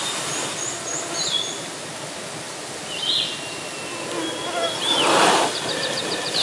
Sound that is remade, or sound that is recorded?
recorded